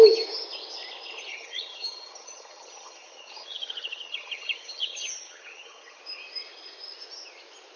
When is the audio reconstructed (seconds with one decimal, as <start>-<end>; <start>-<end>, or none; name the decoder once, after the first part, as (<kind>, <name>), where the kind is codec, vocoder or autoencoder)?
1.3-6.0 (vocoder, HiFi-GAN)